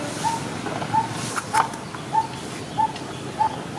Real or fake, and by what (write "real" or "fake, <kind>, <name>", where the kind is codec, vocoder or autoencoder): real